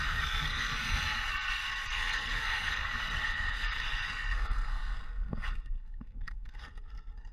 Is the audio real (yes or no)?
no